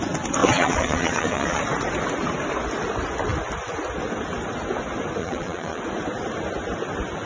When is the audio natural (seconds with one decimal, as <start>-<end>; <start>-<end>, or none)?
0.0-0.4; 1.6-5.2; 5.8-7.3